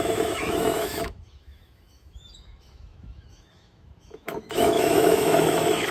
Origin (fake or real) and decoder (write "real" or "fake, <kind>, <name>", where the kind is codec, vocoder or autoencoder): fake, autoencoder, DAC-VAE